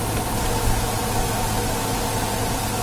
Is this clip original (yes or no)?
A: yes